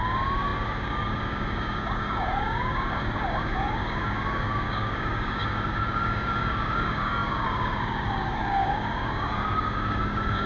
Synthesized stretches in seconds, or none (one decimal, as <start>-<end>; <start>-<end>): 0.0-10.5